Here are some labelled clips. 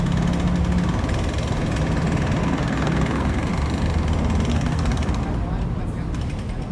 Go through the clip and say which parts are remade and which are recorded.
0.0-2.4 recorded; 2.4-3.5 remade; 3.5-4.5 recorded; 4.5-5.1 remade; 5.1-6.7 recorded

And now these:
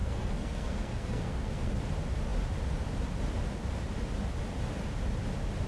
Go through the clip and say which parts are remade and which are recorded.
0.0-1.7 remade; 1.7-5.7 recorded

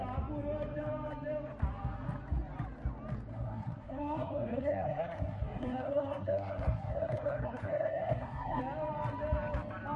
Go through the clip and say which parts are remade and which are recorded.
0.0-3.3 recorded; 3.3-8.6 remade; 8.6-10.0 recorded

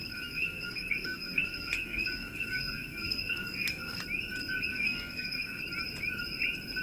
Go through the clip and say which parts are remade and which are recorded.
0.0-4.0 remade; 4.0-4.7 recorded; 4.7-5.6 remade; 5.6-6.8 recorded